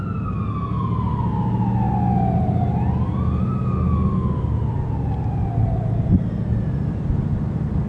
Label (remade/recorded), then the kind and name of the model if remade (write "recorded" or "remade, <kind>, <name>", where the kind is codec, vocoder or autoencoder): recorded